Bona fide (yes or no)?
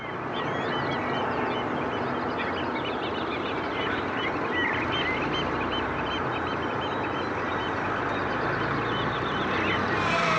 yes